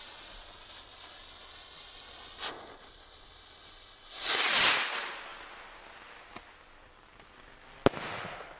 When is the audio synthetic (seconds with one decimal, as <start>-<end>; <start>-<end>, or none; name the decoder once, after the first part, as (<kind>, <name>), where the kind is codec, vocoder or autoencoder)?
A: none